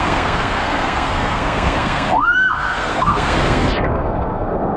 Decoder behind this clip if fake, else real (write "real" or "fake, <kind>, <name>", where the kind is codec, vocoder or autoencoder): fake, codec, SNAC